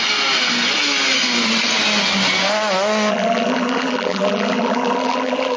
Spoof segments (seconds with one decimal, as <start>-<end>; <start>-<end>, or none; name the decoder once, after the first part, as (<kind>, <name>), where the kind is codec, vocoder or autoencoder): 3.1-5.6 (vocoder, BigVGAN v2)